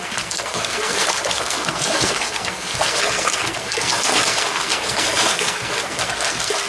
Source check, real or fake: fake